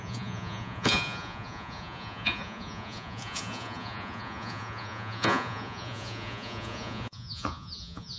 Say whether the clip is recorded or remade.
remade